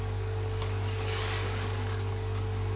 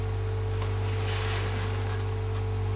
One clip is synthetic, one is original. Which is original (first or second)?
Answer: second